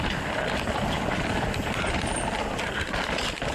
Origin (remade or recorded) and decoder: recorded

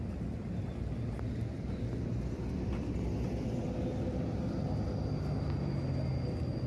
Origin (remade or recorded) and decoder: recorded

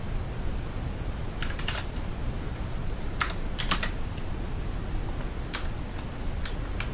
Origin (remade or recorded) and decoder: recorded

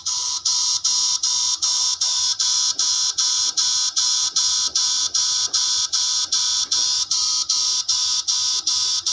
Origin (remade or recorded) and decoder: remade, vocoder, Vocos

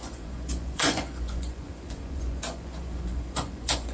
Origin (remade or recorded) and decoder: remade, vocoder, Vocos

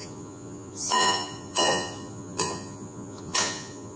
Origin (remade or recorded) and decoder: remade, vocoder, Vocos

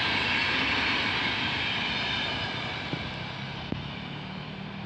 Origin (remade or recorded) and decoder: recorded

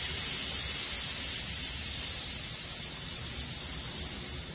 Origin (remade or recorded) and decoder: recorded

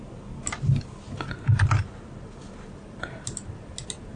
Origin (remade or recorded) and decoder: recorded